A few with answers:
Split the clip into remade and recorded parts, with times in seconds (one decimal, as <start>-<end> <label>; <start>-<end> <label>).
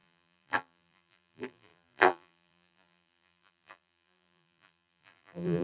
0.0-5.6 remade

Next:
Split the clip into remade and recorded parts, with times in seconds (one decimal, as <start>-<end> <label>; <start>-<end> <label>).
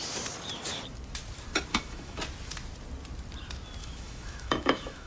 0.0-1.7 recorded; 1.7-2.2 remade; 2.2-3.8 recorded; 3.8-5.1 remade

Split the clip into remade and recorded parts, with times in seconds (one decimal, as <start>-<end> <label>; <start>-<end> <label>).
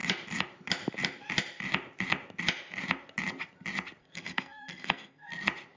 0.0-4.0 recorded; 4.0-5.3 remade; 5.3-5.8 recorded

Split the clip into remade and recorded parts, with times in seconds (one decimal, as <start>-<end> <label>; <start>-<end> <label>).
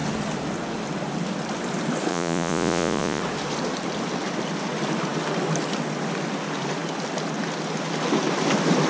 0.0-2.1 recorded; 2.1-3.2 remade; 3.2-8.9 recorded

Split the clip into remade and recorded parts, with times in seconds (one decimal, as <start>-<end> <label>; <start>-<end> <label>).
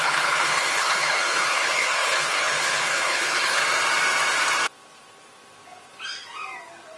0.0-3.6 remade; 3.6-7.0 recorded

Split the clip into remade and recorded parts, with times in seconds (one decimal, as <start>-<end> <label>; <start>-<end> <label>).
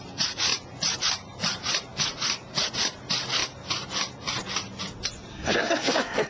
0.0-5.3 recorded; 5.3-6.3 remade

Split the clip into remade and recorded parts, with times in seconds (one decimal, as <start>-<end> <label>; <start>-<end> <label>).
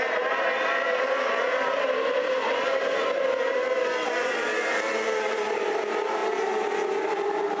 0.0-6.2 remade; 6.2-7.0 recorded; 7.0-7.6 remade